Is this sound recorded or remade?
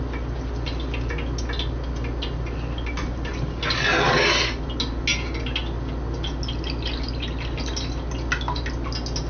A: recorded